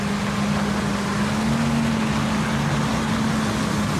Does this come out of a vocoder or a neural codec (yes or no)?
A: no